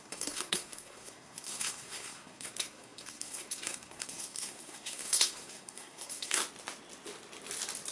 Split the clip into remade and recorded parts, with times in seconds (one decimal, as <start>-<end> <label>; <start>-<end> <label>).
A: 0.0-6.4 remade; 6.4-7.9 recorded